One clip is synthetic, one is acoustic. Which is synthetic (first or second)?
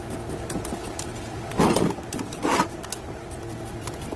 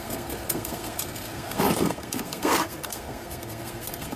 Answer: second